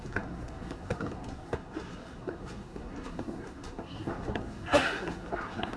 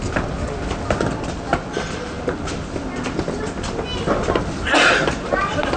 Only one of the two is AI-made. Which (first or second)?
first